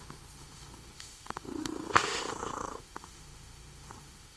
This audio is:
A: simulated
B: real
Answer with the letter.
A